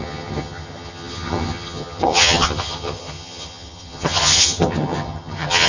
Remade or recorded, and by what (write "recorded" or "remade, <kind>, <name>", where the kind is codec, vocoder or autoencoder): remade, vocoder, HiFi-GAN